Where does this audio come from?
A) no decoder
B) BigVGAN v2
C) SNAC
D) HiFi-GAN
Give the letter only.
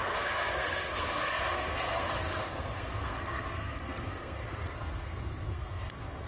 C